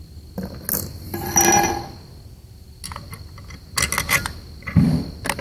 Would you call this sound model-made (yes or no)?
no